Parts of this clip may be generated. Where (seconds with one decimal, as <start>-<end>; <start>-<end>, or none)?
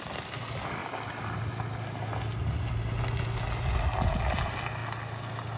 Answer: none